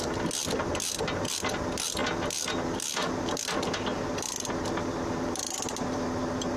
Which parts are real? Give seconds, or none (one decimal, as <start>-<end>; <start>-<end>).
0.0-6.6